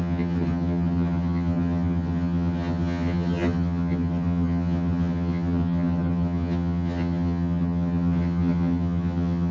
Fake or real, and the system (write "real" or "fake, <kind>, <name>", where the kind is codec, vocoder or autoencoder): fake, vocoder, HiFi-GAN